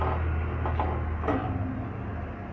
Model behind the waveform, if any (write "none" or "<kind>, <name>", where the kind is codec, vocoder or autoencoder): none